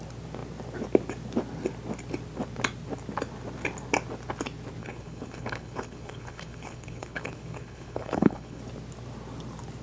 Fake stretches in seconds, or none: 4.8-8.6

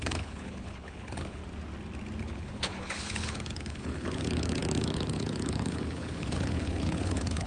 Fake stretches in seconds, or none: 0.0-1.4; 2.2-7.5